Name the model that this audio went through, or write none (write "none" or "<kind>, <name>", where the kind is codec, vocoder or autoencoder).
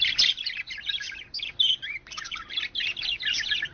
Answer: none